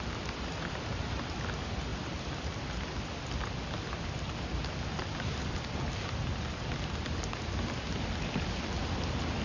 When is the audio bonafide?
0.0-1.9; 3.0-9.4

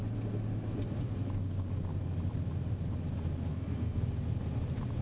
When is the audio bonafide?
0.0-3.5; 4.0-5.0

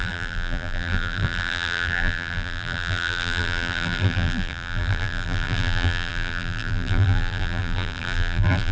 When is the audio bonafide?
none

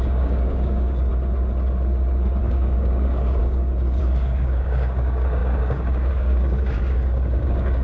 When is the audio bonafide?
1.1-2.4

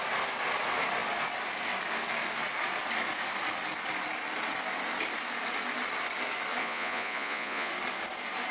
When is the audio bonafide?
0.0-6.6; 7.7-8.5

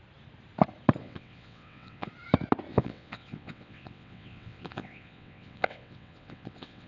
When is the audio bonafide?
0.0-1.0; 2.1-2.7

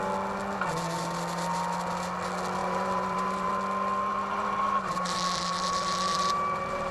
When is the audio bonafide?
0.0-2.6; 3.5-4.1

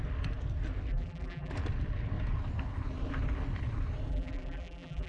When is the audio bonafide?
0.0-0.9; 1.5-4.1